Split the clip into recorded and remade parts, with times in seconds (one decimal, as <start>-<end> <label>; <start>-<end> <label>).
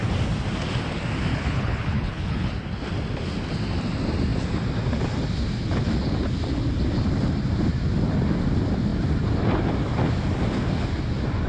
0.0-1.3 recorded; 1.3-2.5 remade; 2.5-11.5 recorded